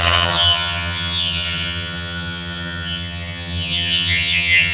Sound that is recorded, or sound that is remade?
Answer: remade